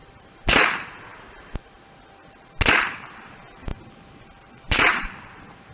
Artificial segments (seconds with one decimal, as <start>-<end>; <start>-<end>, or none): 3.7-5.2